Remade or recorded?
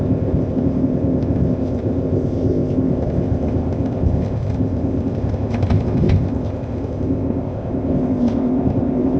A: remade